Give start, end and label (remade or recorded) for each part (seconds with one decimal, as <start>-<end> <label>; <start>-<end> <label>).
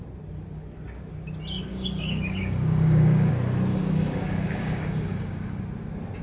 0.0-1.7 recorded; 1.7-3.3 remade; 3.3-3.7 recorded; 3.7-5.6 remade; 5.6-6.2 recorded